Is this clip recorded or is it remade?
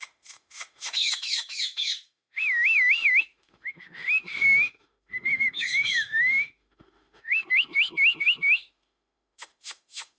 remade